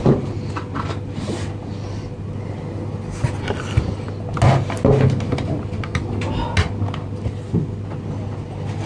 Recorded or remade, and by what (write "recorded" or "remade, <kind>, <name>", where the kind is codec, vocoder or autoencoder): recorded